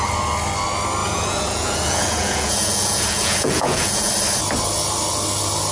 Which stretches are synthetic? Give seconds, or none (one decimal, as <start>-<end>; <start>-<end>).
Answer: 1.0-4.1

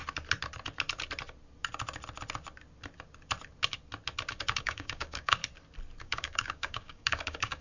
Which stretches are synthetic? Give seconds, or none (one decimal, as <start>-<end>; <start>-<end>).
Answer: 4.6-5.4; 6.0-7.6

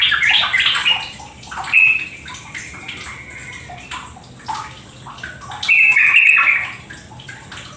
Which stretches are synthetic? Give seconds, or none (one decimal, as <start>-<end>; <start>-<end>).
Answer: none

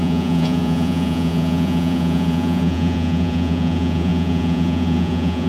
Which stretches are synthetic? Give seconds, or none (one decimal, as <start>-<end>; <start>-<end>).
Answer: 0.0-5.5